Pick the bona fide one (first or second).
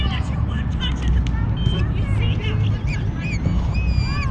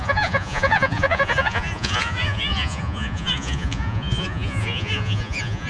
first